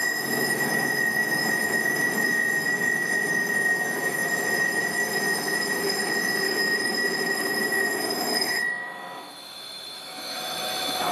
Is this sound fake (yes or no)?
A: yes